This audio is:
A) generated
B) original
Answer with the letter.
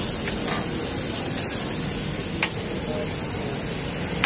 B